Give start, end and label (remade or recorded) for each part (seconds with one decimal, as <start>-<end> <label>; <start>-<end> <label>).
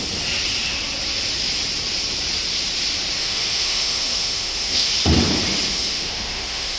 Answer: 0.0-3.2 recorded; 3.2-4.9 remade; 4.9-5.7 recorded; 5.7-6.8 remade